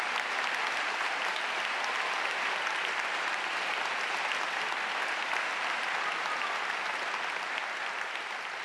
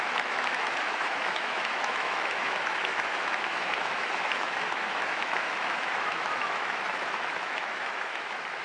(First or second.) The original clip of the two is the first